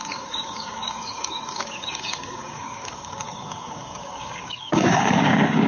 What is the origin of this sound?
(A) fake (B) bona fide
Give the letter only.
A